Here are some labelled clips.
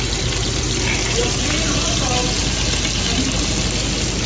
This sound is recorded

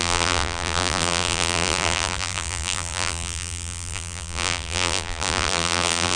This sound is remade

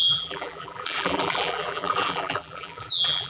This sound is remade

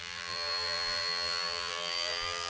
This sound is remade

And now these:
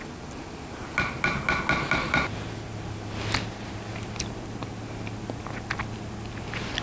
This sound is recorded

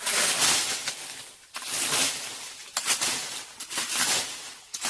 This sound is recorded